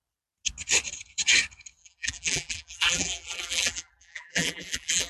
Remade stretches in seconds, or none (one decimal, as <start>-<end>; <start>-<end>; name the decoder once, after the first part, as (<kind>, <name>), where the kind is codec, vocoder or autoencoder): 1.8-5.1 (vocoder, BigVGAN v2)